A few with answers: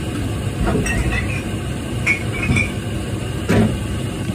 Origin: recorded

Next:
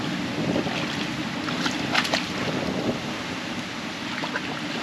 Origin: recorded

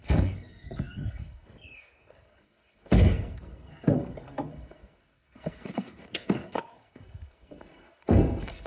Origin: remade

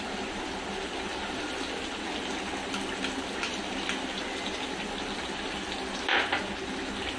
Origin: recorded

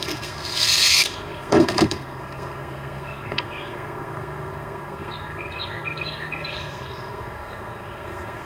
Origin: remade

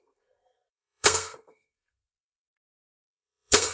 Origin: remade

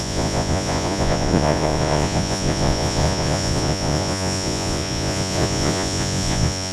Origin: remade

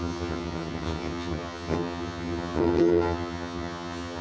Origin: remade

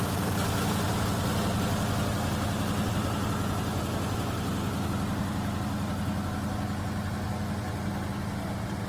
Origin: recorded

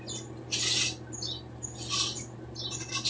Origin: recorded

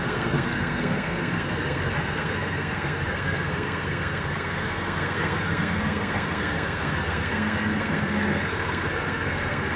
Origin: remade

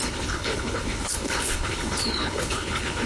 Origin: remade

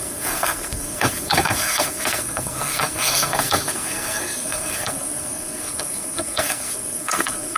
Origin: remade